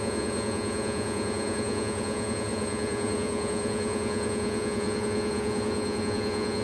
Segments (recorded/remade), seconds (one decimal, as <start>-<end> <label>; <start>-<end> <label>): 0.0-6.6 remade